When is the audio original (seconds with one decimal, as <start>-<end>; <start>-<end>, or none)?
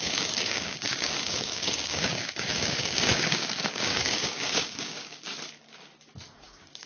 5.3-6.4